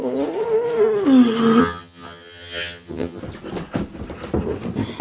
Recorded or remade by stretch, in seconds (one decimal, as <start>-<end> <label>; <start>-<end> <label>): 0.0-1.6 recorded; 1.6-3.2 remade; 3.2-5.0 recorded